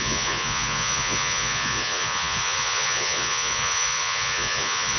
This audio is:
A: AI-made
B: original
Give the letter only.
A